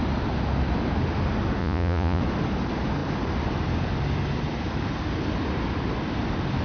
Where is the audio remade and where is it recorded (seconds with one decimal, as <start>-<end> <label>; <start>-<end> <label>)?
0.0-1.6 recorded; 1.6-2.2 remade; 2.2-6.6 recorded